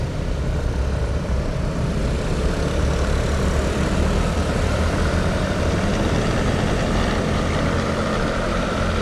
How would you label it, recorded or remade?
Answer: remade